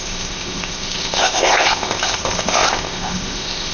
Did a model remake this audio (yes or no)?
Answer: yes